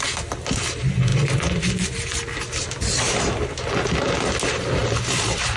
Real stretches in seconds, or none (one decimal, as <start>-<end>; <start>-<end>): 0.0-1.1; 1.6-4.8